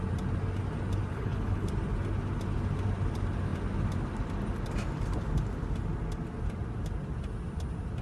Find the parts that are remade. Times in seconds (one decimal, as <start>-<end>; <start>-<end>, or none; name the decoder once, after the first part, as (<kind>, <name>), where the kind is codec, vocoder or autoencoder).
1.1-1.7 (codec, HILCodec)